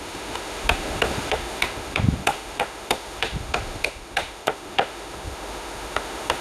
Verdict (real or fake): fake